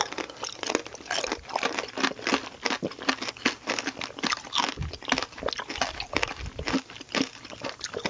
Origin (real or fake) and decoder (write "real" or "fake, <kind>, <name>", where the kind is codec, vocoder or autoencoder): real